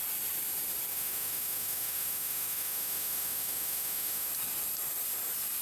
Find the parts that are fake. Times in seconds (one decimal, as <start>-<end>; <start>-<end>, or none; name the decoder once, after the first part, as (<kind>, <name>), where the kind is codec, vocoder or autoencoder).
0.9-4.3 (autoencoder, DAC-VAE)